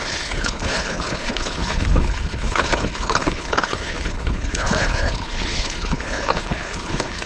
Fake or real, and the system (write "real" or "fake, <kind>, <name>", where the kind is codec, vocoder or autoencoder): fake, codec, HILCodec